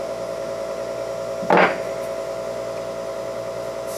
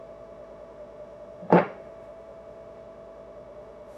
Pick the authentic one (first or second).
first